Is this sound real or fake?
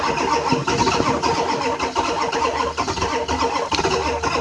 real